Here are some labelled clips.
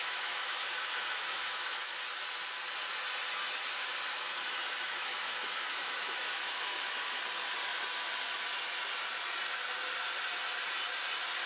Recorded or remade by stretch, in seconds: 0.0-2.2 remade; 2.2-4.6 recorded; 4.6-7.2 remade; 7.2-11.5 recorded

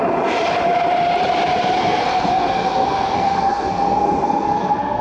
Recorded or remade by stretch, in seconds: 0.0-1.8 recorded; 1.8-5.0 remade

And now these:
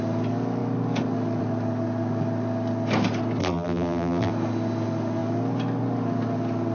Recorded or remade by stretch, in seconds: 0.0-3.4 recorded; 3.4-4.3 remade; 4.3-6.7 recorded